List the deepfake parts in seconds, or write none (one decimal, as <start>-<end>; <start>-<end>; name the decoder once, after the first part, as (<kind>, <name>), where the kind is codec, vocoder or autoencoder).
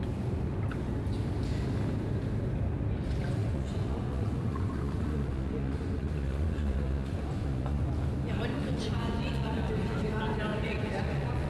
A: 3.4-7.8 (vocoder, Vocos); 8.5-9.7; 10.5-11.5